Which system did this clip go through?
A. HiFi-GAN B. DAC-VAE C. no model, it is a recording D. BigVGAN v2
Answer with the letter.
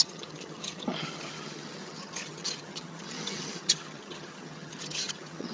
A